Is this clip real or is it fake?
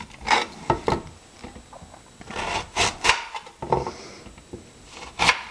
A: real